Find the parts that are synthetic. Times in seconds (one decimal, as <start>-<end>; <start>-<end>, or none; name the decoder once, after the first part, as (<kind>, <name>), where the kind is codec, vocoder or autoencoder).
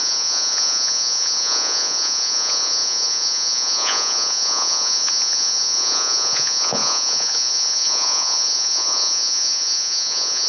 0.0-10.5 (vocoder, Vocos)